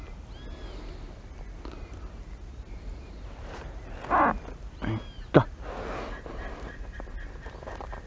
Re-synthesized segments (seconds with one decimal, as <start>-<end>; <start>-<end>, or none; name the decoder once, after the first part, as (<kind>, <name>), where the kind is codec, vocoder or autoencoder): 3.0-3.8 (vocoder, BigVGAN v2)